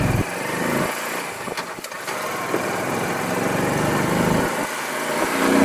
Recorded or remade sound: recorded